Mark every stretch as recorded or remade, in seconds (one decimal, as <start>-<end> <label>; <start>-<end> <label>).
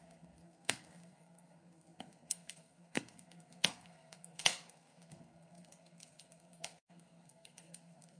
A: 0.0-8.2 remade